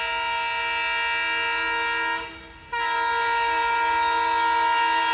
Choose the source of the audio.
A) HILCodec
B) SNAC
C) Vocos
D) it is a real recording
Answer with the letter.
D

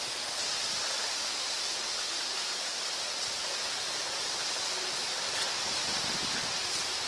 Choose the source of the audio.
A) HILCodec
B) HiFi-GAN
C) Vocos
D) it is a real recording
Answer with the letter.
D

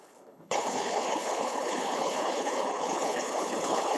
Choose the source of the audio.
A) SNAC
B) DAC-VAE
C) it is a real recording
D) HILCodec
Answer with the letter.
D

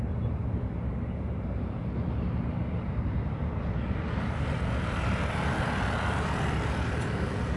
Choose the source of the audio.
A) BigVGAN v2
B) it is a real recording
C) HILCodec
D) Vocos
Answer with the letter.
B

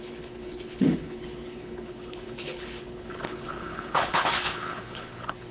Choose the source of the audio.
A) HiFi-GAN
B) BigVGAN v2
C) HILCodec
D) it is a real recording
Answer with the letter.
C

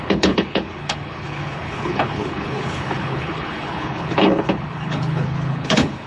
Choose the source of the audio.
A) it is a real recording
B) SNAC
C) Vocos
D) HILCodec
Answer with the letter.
D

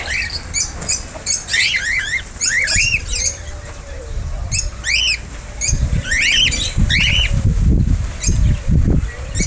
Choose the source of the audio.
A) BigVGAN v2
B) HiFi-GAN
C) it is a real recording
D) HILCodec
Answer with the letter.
C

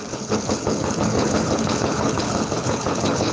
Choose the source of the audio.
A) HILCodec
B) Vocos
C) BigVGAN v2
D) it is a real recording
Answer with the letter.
A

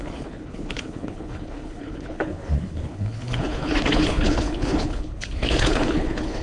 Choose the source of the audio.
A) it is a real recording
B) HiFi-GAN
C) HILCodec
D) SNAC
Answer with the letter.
C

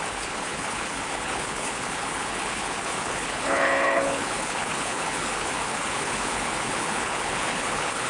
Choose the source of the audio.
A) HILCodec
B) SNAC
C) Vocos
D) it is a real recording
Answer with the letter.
A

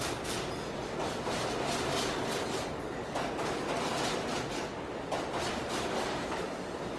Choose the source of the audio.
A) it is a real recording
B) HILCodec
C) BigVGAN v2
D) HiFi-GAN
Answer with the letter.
A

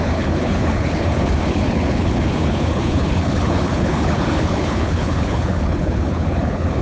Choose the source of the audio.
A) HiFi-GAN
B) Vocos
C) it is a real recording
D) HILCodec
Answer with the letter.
D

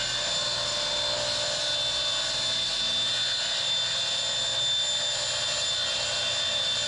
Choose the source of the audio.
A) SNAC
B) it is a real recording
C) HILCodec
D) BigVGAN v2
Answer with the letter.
B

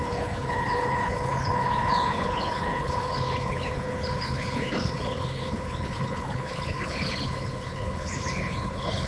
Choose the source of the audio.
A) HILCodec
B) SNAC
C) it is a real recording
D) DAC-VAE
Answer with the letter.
A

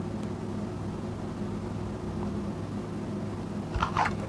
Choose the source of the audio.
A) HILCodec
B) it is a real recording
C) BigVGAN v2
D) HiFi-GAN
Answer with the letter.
B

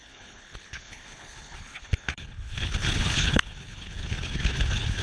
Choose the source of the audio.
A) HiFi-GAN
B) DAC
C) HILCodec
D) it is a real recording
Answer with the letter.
C